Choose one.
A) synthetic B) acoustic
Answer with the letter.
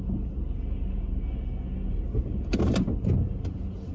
B